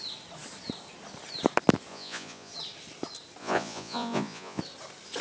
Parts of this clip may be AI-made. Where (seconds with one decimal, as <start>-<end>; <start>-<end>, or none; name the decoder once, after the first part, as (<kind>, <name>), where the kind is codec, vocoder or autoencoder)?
1.9-2.5 (vocoder, Vocos); 3.4-4.6